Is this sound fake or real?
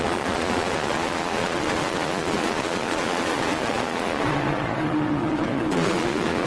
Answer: fake